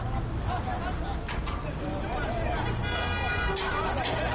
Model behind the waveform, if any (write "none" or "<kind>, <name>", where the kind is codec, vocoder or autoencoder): none